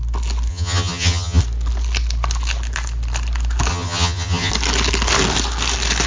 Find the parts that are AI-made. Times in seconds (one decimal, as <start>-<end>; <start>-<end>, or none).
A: 0.5-1.4; 3.7-4.5